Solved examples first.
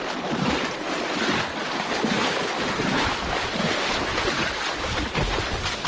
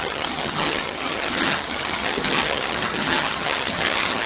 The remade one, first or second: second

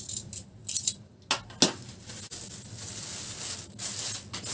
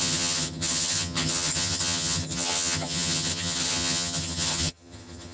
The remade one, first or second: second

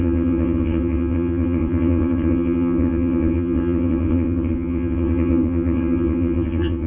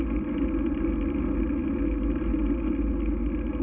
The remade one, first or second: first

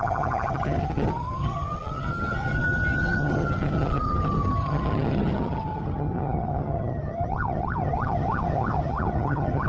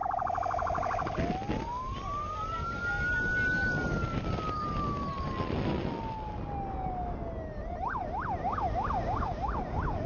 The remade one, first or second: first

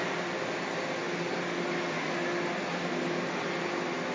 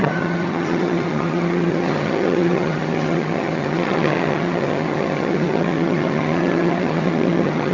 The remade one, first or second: second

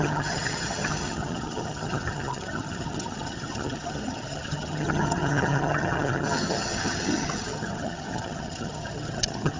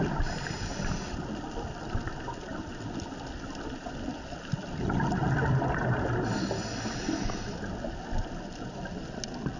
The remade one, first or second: first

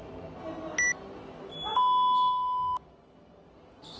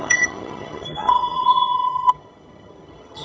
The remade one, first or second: second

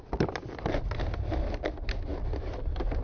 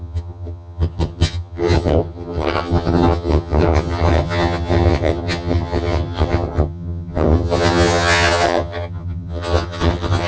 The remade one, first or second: second